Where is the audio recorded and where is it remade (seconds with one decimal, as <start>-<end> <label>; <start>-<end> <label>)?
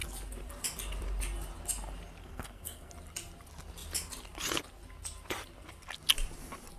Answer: 0.0-2.2 recorded; 2.2-2.9 remade; 2.9-6.8 recorded